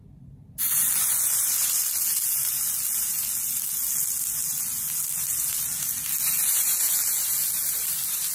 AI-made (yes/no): no